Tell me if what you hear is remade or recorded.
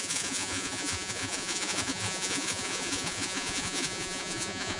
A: remade